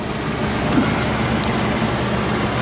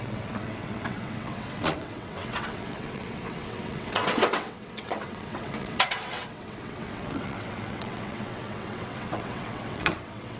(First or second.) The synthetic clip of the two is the second